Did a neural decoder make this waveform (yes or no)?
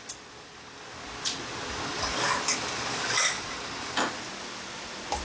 no